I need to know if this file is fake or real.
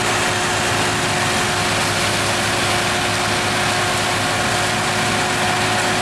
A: real